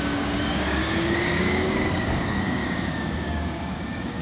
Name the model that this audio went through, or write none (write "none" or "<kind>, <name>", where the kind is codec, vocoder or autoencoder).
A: codec, DAC